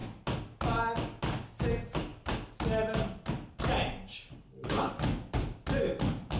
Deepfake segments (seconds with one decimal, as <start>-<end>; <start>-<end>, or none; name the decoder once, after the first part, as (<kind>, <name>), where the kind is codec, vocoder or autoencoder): 4.3-4.9 (codec, HILCodec)